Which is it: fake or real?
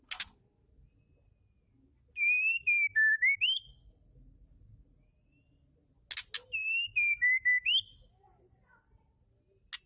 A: real